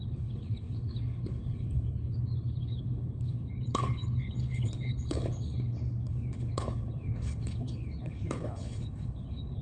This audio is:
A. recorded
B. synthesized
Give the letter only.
B